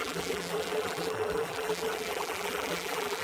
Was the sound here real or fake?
fake